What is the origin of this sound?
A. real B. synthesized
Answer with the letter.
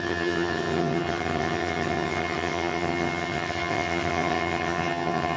B